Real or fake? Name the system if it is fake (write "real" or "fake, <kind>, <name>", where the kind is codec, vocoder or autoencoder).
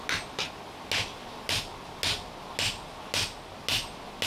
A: real